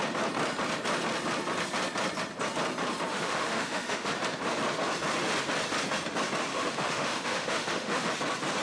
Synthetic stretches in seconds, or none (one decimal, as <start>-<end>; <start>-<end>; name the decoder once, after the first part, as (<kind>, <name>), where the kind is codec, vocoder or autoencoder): 3.1-4.1 (autoencoder, DAC-VAE); 6.5-8.1